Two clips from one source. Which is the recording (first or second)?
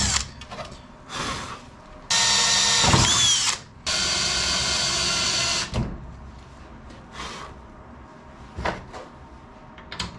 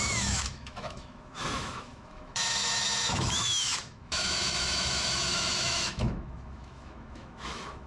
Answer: first